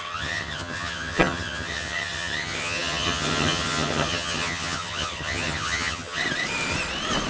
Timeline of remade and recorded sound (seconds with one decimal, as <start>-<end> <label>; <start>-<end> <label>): 0.0-6.2 remade; 6.2-7.3 recorded